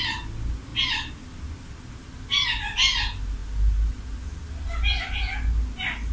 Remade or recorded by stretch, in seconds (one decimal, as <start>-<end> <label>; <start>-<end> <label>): 0.0-6.1 recorded